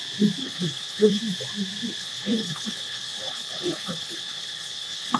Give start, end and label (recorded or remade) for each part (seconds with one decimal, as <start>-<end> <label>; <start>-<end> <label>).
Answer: 0.0-0.4 recorded; 0.4-1.2 remade; 1.2-2.0 recorded; 2.0-5.2 remade